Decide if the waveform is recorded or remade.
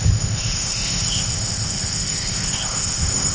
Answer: remade